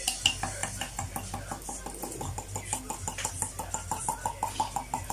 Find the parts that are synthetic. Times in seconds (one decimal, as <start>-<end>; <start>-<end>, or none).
none